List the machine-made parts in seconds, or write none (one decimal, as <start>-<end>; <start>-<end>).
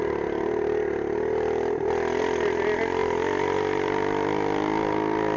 none